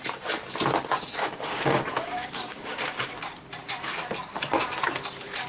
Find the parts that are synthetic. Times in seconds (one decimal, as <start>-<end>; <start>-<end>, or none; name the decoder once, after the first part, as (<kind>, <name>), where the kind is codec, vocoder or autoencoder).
1.2-3.1 (codec, DAC)